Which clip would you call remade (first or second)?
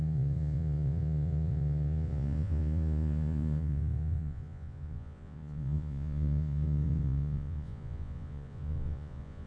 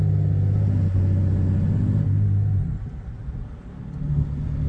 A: first